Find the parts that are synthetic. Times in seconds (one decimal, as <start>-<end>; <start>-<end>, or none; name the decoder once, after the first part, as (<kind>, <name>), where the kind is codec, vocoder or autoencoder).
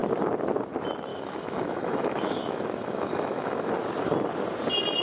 1.1-3.7 (autoencoder, DAC-VAE)